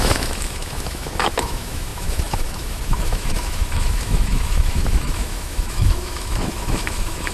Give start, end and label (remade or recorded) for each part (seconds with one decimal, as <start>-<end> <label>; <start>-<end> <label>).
0.0-7.3 remade